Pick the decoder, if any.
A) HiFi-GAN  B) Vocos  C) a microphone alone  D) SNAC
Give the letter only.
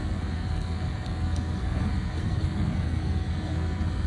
D